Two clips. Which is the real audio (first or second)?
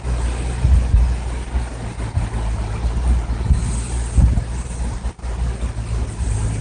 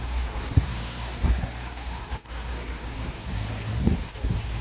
first